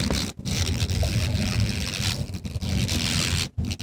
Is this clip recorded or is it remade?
recorded